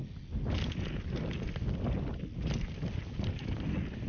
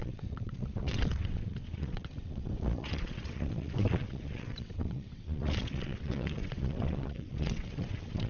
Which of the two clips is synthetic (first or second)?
second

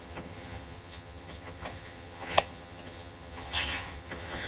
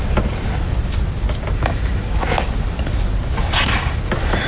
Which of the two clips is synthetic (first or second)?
first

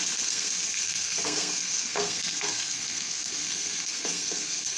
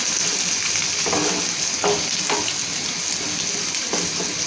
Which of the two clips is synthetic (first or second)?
first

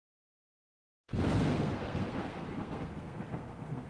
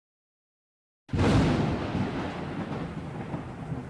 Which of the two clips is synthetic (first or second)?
first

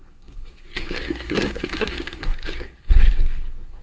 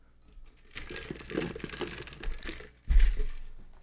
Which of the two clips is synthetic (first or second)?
first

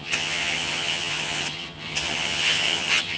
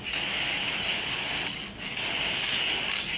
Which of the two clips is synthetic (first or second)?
first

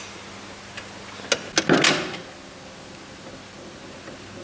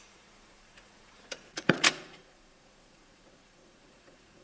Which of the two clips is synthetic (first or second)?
second